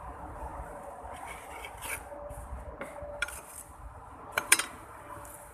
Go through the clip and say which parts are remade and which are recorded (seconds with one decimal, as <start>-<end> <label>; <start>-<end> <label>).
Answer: 0.0-0.5 remade; 0.5-3.0 recorded; 3.0-5.5 remade

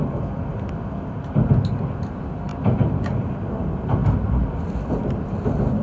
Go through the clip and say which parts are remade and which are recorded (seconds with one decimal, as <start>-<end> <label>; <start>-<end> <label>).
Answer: 0.0-5.8 recorded